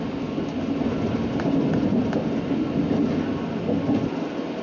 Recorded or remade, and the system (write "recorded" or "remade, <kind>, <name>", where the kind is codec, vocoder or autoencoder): recorded